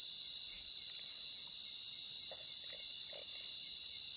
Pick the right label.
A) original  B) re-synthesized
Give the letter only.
A